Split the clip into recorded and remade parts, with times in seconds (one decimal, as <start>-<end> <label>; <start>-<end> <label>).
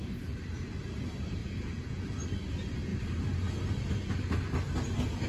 0.0-1.4 recorded; 1.4-2.0 remade; 2.0-5.3 recorded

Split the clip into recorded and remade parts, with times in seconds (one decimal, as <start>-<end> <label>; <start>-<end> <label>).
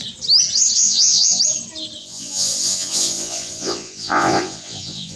0.0-0.8 recorded; 0.8-1.4 remade; 1.4-2.0 recorded; 2.0-5.2 remade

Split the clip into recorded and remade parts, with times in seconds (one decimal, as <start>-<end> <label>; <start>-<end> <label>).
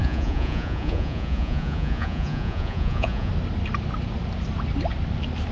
0.0-3.3 remade; 3.3-5.5 recorded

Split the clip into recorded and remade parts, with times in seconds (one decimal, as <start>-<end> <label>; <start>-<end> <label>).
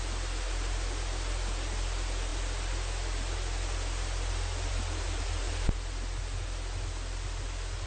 0.0-7.9 recorded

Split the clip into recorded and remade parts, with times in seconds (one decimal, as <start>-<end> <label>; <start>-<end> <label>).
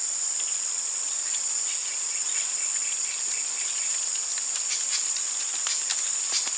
0.0-1.8 recorded; 1.8-3.8 remade; 3.8-6.6 recorded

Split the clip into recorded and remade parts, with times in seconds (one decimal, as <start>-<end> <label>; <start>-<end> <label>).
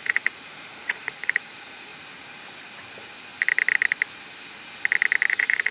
0.0-1.9 remade; 1.9-5.3 recorded; 5.3-5.7 remade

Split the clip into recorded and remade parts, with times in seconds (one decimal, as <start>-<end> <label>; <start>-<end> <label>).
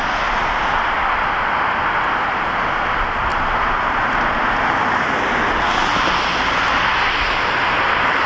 0.0-8.3 recorded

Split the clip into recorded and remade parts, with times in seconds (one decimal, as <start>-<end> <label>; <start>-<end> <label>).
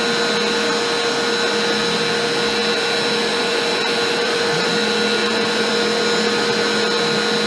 0.0-3.3 recorded; 3.3-4.7 remade; 4.7-5.2 recorded; 5.2-5.7 remade; 5.7-7.5 recorded